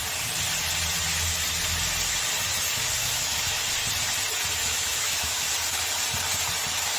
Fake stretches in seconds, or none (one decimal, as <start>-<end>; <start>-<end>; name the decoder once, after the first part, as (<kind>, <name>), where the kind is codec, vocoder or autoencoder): 3.0-3.6 (autoencoder, DAC-VAE); 4.6-5.5